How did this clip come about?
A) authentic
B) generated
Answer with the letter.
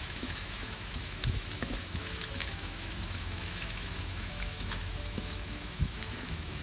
B